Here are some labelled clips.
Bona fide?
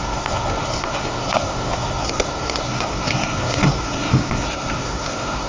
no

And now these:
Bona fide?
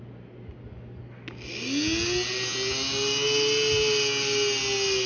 yes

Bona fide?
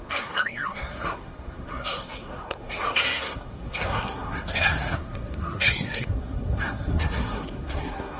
no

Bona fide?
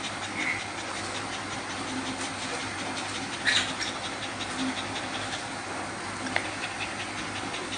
yes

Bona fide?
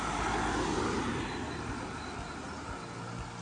yes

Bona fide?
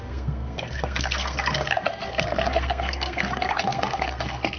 no